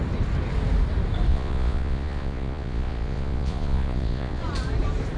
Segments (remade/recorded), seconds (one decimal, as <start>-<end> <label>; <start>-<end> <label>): 0.0-1.3 recorded; 1.3-4.4 remade; 4.4-5.2 recorded